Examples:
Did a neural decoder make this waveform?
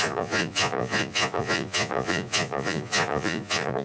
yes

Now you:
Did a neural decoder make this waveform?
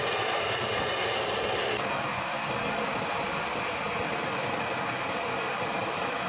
no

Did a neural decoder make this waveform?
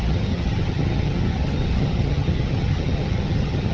yes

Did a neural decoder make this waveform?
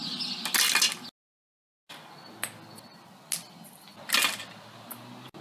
no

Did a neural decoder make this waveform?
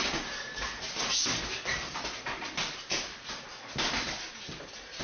no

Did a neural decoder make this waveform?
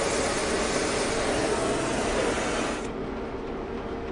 no